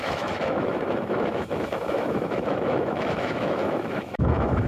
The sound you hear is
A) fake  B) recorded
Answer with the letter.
A